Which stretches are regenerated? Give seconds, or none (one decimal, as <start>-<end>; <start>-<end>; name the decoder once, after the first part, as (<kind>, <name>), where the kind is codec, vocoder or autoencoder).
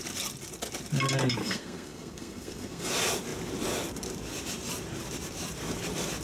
1.4-2.9 (codec, SNAC)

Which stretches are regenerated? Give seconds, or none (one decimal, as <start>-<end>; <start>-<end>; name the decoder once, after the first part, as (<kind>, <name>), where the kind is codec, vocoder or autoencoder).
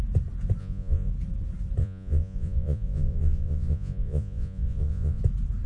0.6-1.1 (vocoder, Vocos); 1.8-5.2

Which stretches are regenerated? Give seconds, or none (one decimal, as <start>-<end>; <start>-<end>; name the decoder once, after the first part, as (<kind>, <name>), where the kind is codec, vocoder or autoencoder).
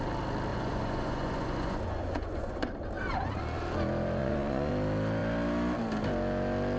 0.5-2.7 (vocoder, Vocos); 4.2-4.7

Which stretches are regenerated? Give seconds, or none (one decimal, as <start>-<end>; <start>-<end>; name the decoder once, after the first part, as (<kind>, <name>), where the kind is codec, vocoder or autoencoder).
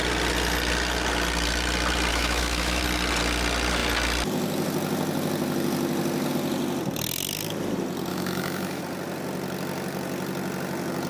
2.1-2.8 (autoencoder, DAC-VAE); 8.1-8.8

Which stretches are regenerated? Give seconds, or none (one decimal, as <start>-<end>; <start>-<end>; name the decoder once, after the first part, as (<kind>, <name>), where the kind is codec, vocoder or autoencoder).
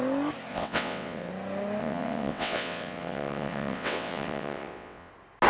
0.5-1.3 (vocoder, WaveNeXt); 1.8-5.1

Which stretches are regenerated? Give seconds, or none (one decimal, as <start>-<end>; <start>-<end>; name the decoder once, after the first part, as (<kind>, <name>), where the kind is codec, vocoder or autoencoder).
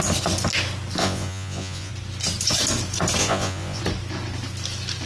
1.0-1.9 (vocoder, Vocos); 3.2-3.8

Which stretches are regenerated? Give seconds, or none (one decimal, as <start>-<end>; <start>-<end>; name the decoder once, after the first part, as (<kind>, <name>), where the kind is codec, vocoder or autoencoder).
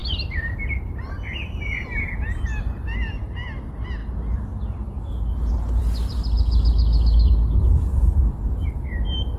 none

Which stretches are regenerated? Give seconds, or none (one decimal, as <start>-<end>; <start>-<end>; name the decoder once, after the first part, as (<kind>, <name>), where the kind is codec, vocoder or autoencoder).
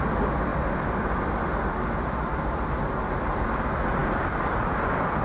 none